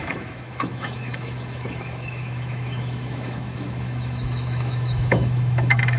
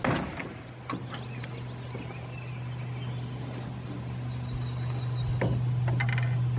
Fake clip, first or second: first